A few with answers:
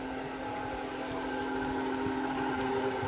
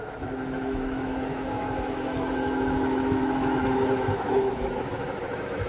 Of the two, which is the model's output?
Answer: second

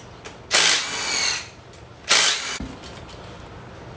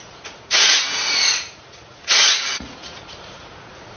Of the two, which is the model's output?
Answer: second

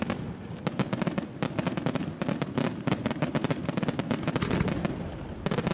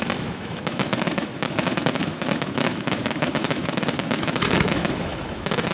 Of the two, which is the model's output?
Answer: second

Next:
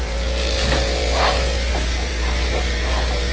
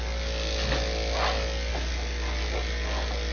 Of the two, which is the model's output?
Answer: first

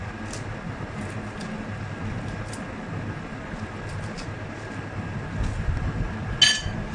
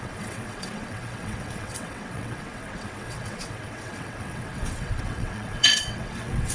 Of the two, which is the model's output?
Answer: second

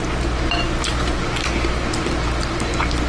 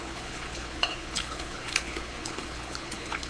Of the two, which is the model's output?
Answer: second